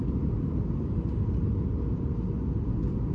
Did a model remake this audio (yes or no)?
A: no